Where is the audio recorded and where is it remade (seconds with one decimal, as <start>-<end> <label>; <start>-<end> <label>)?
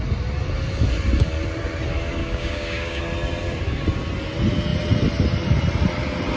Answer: 0.0-2.2 recorded; 2.2-3.0 remade; 3.0-6.4 recorded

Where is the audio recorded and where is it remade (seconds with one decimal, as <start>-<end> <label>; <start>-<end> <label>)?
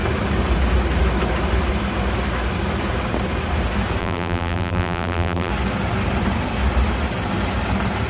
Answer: 0.0-4.0 recorded; 4.0-5.5 remade; 5.5-8.1 recorded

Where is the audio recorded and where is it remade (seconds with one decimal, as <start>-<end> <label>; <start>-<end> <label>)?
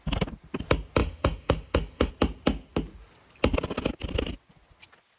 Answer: 0.0-1.0 recorded; 1.0-2.1 remade; 2.1-5.2 recorded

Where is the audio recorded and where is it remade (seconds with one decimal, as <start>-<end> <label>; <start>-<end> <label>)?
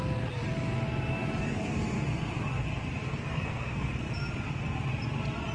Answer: 0.0-3.1 recorded; 3.1-4.1 remade; 4.1-5.5 recorded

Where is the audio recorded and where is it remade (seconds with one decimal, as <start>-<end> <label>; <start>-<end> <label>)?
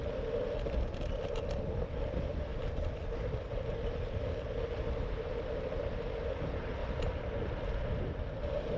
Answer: 0.0-8.8 recorded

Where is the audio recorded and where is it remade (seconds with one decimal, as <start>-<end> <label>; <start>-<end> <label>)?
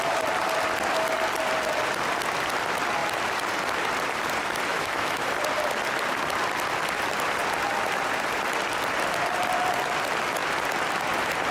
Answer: 0.0-4.7 recorded; 4.7-5.3 remade; 5.3-11.5 recorded